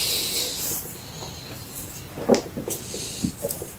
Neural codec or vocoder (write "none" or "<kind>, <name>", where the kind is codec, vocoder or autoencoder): none